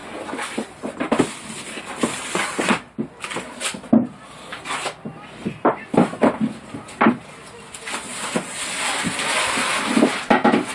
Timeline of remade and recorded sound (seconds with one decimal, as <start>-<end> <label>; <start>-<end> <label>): 0.0-1.8 remade; 1.8-10.7 recorded